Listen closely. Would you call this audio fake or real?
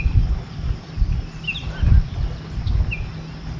real